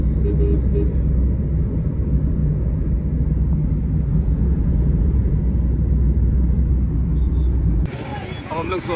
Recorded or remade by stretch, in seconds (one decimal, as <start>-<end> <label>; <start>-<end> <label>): 0.0-2.4 recorded; 2.4-2.9 remade; 2.9-4.1 recorded; 4.1-5.4 remade; 5.4-8.1 recorded; 8.1-9.0 remade